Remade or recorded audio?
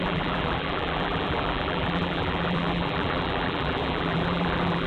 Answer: remade